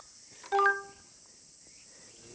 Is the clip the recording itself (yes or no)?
yes